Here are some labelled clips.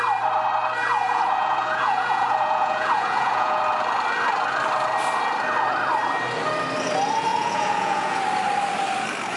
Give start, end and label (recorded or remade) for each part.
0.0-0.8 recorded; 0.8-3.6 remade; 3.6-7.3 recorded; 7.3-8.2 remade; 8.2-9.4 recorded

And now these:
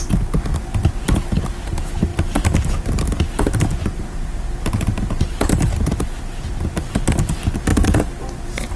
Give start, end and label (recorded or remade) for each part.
0.0-8.8 recorded

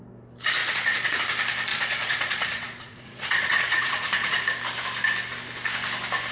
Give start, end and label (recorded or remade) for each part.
0.0-0.6 recorded; 0.6-1.2 remade; 1.2-1.7 recorded; 1.7-4.4 remade; 4.4-6.3 recorded